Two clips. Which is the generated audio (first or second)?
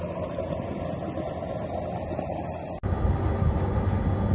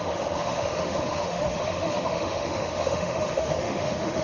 second